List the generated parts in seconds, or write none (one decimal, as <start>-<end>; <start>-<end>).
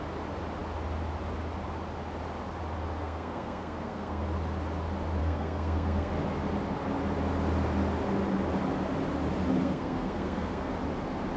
3.0-4.2; 5.2-6.1; 9.6-10.7